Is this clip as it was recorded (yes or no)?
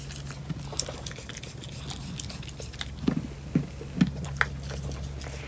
yes